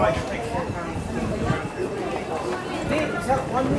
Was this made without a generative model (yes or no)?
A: yes